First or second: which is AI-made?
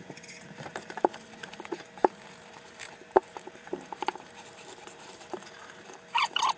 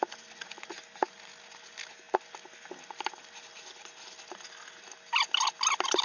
first